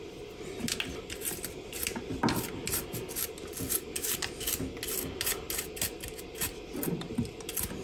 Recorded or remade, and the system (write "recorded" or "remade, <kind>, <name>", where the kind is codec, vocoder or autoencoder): recorded